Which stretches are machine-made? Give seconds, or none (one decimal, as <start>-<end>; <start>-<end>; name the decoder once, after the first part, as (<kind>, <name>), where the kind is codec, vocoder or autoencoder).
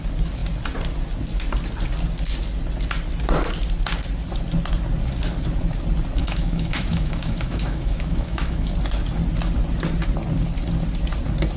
6.2-8.7 (autoencoder, DAC-VAE)